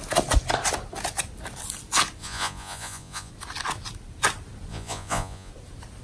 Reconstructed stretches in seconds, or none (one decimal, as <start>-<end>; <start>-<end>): 2.2-3.3; 4.7-5.5